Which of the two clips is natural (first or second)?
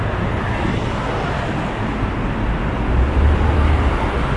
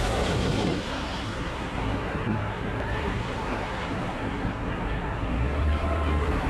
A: first